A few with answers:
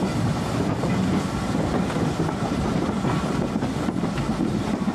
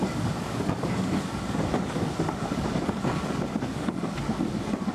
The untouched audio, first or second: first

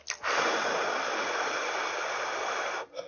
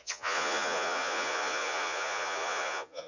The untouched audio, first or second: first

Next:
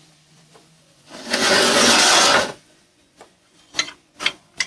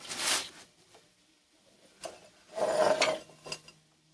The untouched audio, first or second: second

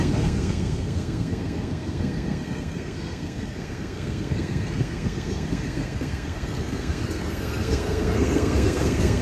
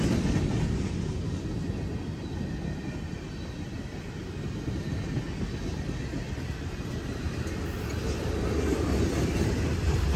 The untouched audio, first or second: second